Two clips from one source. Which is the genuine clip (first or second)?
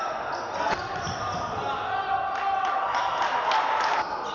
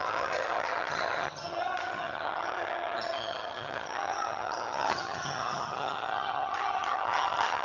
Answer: first